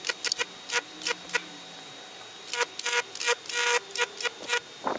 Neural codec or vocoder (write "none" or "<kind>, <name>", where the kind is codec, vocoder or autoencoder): none